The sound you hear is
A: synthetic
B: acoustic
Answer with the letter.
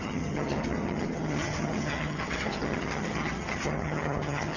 A